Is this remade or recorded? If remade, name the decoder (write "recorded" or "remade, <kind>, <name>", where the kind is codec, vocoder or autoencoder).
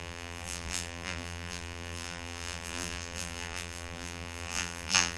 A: remade, vocoder, BigVGAN v2